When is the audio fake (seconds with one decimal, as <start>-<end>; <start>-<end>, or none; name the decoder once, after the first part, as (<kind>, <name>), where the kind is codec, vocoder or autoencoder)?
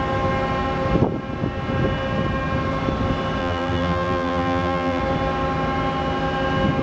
3.4-5.0 (vocoder, BigVGAN v2)